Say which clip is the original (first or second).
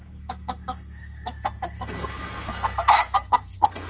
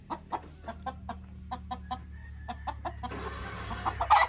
second